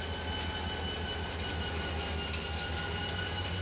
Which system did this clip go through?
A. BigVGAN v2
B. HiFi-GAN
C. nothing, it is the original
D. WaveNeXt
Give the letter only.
C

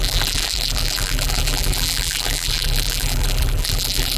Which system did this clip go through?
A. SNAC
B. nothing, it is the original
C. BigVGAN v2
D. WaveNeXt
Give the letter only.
C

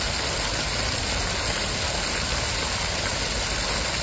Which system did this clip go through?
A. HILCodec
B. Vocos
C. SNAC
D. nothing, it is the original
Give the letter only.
D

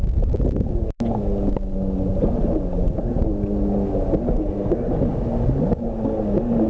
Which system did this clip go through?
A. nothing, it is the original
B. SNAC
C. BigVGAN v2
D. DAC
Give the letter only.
A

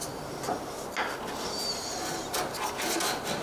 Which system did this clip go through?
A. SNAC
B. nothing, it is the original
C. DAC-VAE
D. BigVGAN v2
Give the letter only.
B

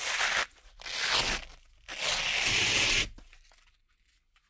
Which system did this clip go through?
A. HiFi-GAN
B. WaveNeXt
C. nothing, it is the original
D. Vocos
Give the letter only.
C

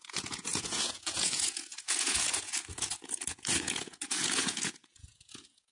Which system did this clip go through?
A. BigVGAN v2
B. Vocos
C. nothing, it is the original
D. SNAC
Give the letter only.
B